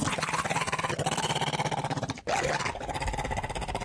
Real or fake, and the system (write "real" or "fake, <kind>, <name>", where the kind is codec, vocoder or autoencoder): real